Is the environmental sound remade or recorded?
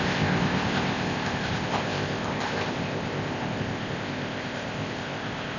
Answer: remade